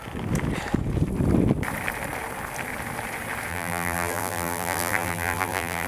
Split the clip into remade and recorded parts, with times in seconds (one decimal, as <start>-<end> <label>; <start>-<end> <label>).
0.0-3.5 recorded; 3.5-5.9 remade

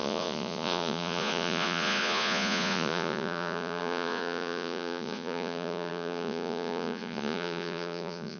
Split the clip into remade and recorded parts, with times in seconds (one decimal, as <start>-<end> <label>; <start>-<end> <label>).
0.0-8.4 remade